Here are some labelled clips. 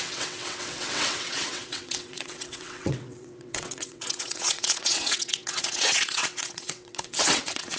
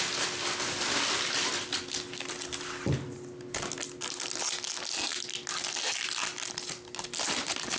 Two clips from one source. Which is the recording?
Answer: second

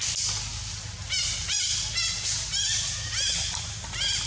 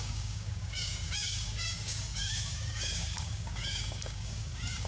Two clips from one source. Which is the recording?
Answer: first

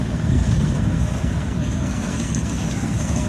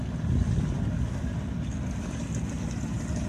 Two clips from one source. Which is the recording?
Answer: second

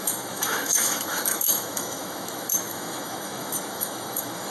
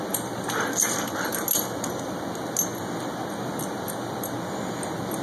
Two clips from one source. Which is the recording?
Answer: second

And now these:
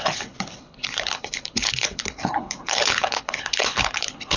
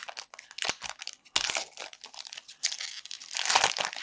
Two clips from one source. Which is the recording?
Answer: second